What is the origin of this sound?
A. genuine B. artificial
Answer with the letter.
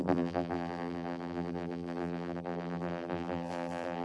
B